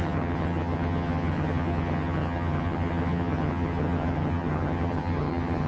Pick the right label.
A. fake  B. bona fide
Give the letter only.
A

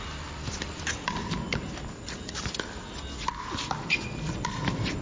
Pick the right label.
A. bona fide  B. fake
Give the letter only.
A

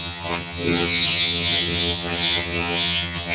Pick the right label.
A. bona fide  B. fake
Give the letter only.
B